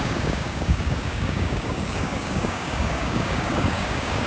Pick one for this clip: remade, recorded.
remade